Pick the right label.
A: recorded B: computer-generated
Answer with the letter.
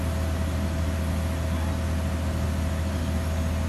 A